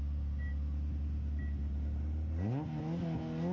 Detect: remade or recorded recorded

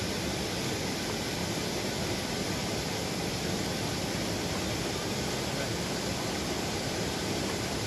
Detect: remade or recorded recorded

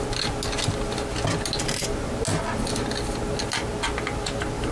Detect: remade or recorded recorded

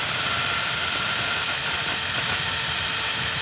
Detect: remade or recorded remade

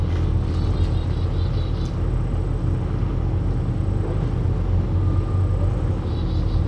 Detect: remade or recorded recorded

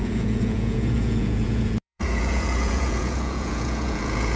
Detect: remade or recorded remade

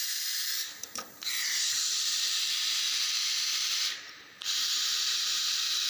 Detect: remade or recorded remade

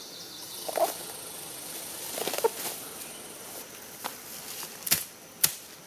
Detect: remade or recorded recorded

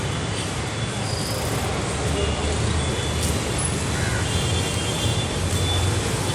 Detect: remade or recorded recorded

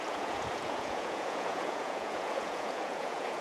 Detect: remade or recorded remade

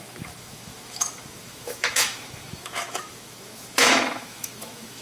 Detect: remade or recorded remade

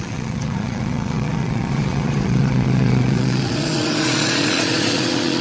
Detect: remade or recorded remade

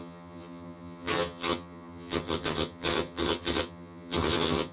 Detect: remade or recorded remade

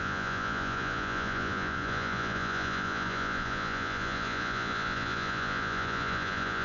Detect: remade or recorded remade